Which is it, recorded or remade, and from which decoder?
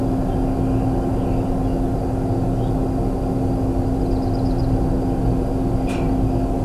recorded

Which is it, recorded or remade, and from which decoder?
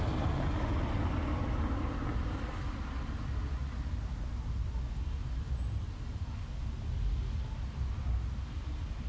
recorded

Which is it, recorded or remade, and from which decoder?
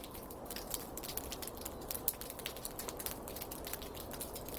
recorded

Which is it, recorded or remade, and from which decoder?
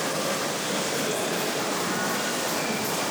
recorded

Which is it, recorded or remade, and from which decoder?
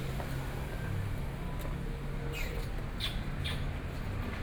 recorded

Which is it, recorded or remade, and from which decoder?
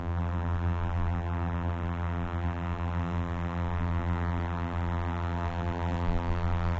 remade, vocoder, BigVGAN v2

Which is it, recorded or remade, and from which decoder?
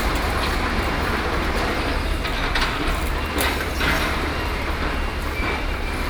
remade, vocoder, BigVGAN v2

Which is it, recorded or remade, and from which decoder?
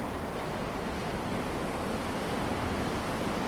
recorded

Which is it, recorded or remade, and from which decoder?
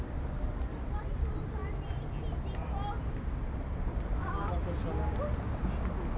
recorded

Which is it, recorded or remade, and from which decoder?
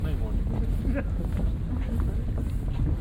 recorded